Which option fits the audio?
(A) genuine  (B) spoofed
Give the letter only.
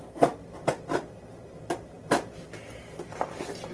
A